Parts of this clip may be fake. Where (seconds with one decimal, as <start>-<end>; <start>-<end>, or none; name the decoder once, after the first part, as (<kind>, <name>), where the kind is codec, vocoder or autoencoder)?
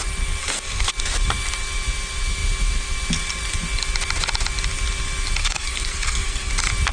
0.4-0.9 (codec, SNAC); 5.4-6.5